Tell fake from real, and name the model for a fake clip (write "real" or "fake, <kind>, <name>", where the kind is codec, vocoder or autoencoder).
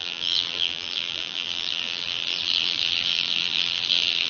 fake, vocoder, BigVGAN v2